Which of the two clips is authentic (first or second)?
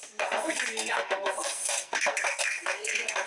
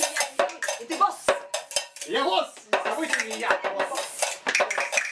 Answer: second